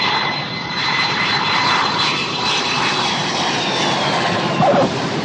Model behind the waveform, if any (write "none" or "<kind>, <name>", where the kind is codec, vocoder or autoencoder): vocoder, BigVGAN v2